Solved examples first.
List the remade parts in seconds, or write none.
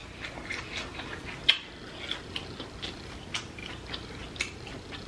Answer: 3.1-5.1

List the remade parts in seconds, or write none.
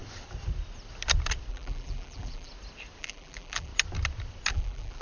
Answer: 1.5-2.5; 3.0-3.7; 4.5-5.0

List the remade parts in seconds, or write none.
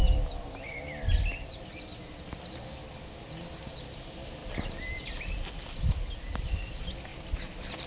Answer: 0.0-1.6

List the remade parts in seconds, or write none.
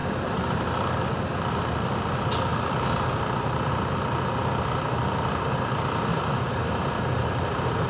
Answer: 0.0-1.0; 6.1-6.7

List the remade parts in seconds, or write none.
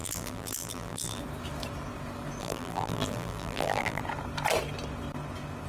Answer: 0.0-1.2; 2.4-4.0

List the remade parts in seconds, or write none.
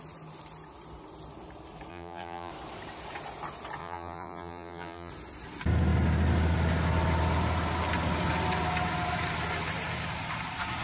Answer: 1.9-2.5; 3.8-5.1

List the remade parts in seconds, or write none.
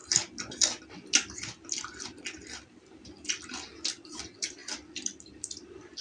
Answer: 4.6-6.0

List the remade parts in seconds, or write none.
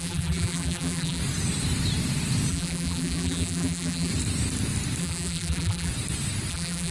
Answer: 0.0-1.2; 2.5-4.1; 5.0-5.9; 6.5-6.9